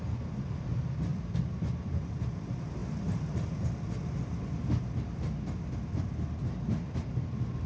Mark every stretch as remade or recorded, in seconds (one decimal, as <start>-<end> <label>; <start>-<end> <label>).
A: 0.0-1.1 recorded; 1.1-2.0 remade; 2.0-7.7 recorded